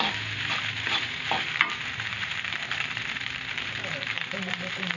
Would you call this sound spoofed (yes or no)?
yes